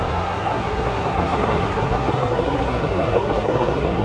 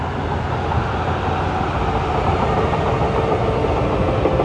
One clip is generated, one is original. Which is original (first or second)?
second